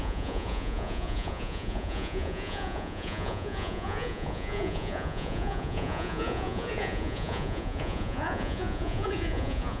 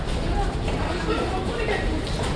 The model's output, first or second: first